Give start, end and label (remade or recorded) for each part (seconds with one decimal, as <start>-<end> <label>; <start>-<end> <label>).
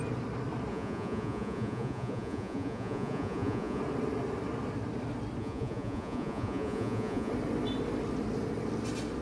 0.0-0.7 recorded; 0.7-3.8 remade; 3.8-5.4 recorded; 5.4-7.3 remade; 7.3-9.2 recorded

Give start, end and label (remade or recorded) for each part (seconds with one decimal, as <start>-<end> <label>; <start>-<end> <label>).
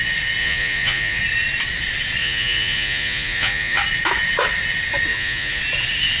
0.0-0.4 recorded; 0.4-1.2 remade; 1.2-2.2 recorded; 2.2-3.8 remade; 3.8-5.1 recorded; 5.1-5.6 remade; 5.6-6.2 recorded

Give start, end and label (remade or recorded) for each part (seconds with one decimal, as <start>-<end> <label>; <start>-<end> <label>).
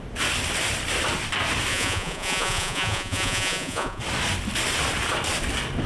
0.0-1.7 recorded; 1.7-4.0 remade; 4.0-5.9 recorded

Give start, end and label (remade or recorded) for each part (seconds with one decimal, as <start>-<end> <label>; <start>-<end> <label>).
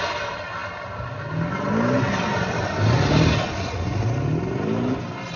0.0-5.4 recorded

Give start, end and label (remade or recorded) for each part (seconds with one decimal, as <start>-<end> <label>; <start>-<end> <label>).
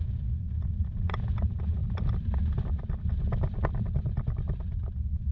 0.0-1.8 remade; 1.8-5.3 recorded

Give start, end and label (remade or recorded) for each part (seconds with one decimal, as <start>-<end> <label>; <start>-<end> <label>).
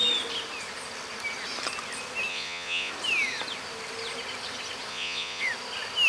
0.0-2.3 recorded; 2.3-2.9 remade; 2.9-4.9 recorded; 4.9-5.4 remade; 5.4-6.1 recorded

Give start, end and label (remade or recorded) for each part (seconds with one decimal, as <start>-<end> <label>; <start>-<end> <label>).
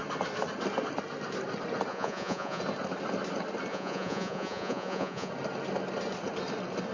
0.0-1.9 recorded; 1.9-2.6 remade; 2.6-3.7 recorded; 3.7-5.3 remade; 5.3-6.9 recorded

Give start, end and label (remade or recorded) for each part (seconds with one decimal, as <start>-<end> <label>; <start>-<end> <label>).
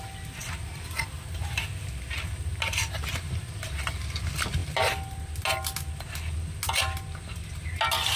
0.0-8.2 recorded